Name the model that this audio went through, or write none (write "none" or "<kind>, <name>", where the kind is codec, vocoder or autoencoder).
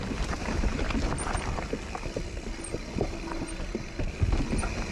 none